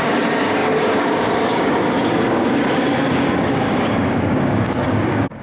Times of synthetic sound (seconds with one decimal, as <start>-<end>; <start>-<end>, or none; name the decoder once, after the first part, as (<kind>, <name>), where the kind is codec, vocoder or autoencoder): 0.0-5.4 (codec, DAC)